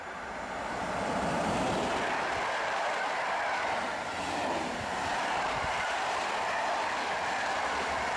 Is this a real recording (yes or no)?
no